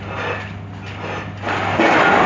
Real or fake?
real